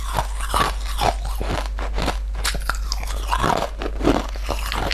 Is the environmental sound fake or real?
real